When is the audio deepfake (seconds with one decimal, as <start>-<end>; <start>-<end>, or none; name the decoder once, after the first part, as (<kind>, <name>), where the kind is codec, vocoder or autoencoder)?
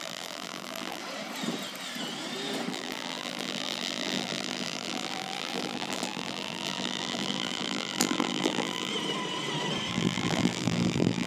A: 0.0-1.0 (vocoder, BigVGAN v2); 2.7-8.9; 9.9-11.3